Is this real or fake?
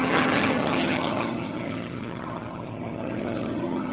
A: fake